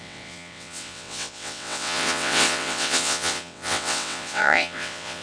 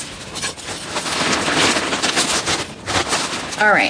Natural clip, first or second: second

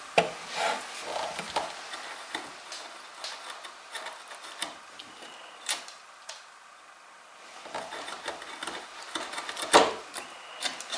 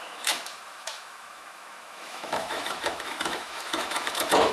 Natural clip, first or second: first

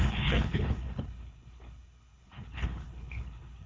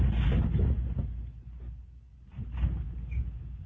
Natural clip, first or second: second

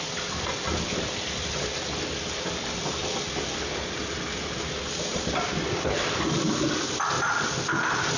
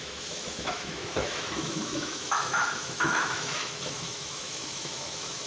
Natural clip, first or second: first